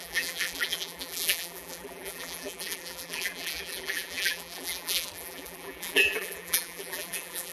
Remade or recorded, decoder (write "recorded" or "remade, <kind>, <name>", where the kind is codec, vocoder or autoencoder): remade, vocoder, BigVGAN v2